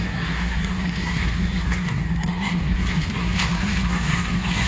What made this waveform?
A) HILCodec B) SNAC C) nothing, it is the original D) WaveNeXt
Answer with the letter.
B